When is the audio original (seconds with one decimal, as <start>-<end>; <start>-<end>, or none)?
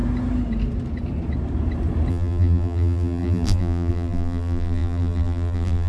0.0-2.1